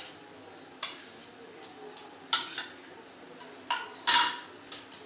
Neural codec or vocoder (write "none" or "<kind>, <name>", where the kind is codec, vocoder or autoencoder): none